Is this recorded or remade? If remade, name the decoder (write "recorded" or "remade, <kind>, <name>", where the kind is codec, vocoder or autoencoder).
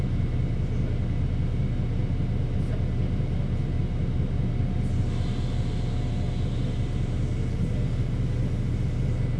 recorded